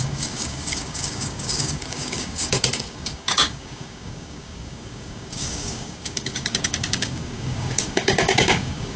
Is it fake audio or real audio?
fake